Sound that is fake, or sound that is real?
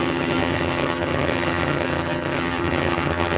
fake